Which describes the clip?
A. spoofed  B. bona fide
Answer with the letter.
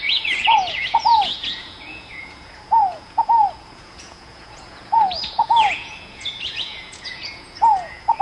A